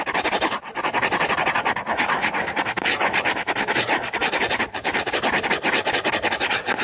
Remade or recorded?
recorded